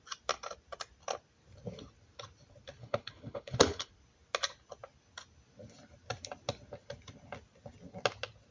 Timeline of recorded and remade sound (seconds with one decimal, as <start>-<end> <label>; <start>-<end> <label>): 0.0-2.8 recorded; 2.8-3.9 remade; 3.9-8.5 recorded